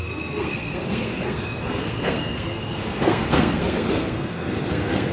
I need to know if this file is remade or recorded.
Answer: remade